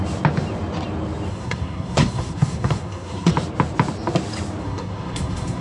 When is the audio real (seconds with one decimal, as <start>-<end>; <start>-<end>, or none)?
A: 0.0-1.3; 3.3-4.6